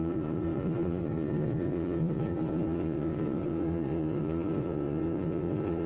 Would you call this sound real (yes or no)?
no